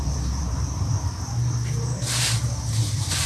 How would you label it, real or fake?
fake